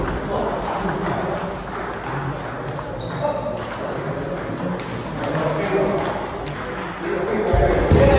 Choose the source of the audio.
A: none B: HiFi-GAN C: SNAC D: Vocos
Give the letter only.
A